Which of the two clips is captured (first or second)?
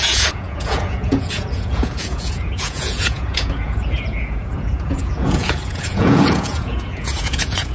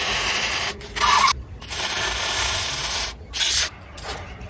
second